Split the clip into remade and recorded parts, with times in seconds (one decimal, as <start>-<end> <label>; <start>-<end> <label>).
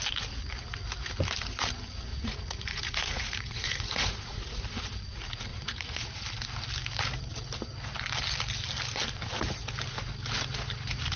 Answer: 0.0-2.1 recorded; 2.1-4.6 remade; 4.6-5.5 recorded; 5.5-6.2 remade; 6.2-11.2 recorded